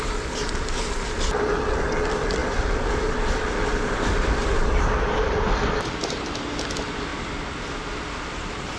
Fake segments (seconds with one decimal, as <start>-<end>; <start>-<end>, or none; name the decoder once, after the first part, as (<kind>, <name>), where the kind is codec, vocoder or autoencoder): none